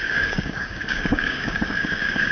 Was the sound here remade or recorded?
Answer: remade